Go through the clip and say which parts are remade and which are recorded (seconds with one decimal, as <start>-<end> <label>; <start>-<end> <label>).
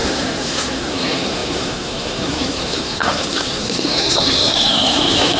0.0-5.4 remade